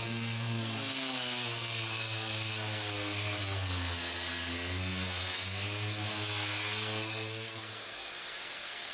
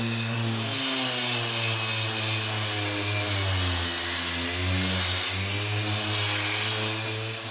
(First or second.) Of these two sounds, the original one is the second